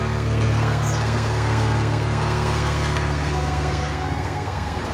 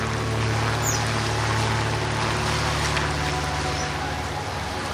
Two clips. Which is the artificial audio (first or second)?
first